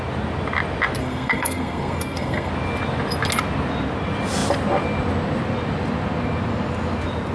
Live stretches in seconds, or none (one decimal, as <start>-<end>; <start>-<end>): 0.0-1.0; 2.5-7.3